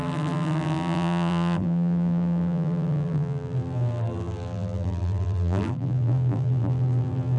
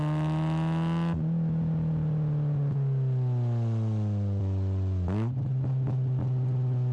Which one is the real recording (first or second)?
second